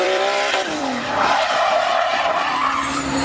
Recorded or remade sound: remade